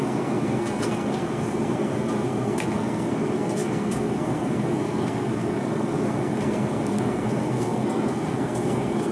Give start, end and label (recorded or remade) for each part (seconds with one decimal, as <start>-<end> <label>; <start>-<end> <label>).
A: 0.0-9.1 remade